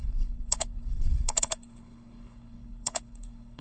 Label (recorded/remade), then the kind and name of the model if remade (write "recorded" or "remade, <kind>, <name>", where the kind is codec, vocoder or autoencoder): remade, codec, HILCodec